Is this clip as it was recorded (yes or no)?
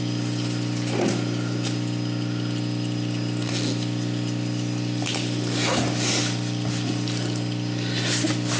yes